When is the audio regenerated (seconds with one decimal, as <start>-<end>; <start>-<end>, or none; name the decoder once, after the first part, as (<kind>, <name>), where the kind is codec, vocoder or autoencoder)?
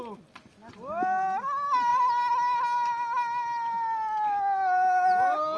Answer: none